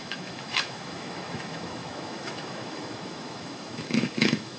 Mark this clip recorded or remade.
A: remade